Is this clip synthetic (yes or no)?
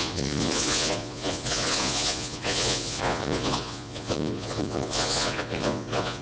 yes